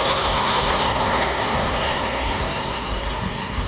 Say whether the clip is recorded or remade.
remade